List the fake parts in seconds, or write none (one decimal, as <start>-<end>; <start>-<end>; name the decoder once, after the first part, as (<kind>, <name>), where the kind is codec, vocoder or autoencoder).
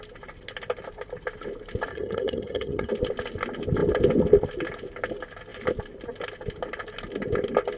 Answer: 1.9-2.9 (vocoder, HiFi-GAN)